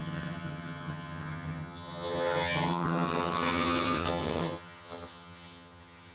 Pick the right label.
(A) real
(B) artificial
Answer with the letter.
B